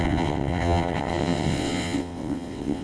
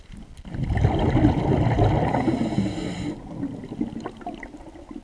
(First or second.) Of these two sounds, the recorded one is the second